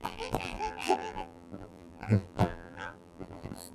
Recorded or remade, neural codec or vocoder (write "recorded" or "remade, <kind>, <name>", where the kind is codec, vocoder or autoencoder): remade, vocoder, BigVGAN v2